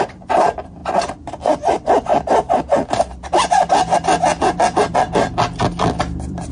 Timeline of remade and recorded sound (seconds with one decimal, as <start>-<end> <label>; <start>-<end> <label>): 0.0-2.1 remade; 2.1-6.0 recorded; 6.0-6.5 remade